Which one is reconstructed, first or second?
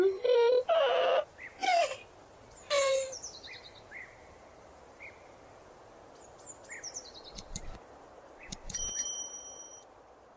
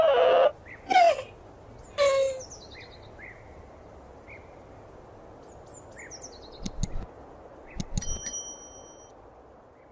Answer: first